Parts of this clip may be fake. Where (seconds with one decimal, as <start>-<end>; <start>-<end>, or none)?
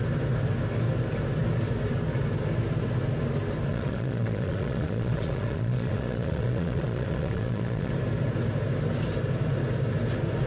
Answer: 3.7-7.9